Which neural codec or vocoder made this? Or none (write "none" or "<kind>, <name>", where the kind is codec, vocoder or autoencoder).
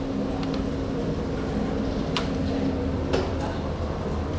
none